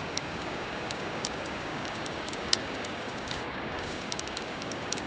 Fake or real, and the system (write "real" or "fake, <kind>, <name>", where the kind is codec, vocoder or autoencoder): fake, codec, DAC